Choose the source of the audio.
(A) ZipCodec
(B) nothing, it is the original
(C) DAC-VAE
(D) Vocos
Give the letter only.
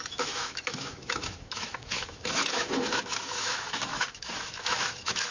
C